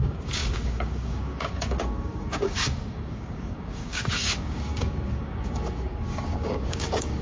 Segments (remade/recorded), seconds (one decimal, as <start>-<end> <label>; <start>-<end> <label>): 0.0-7.2 remade